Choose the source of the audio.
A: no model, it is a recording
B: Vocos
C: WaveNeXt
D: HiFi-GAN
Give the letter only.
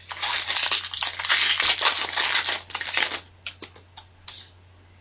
A